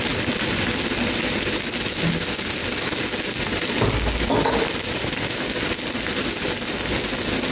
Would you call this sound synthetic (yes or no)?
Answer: no